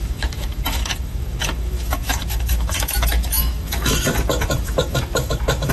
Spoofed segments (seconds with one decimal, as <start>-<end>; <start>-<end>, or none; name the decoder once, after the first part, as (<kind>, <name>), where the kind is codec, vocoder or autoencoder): 0.0-5.7 (autoencoder, DAC-VAE)